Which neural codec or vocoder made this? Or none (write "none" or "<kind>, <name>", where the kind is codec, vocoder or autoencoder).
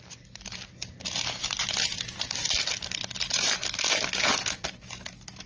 none